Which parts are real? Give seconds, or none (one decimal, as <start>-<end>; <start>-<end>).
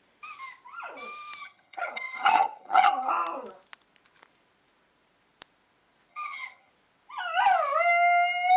0.0-1.4; 3.1-6.1; 6.7-8.6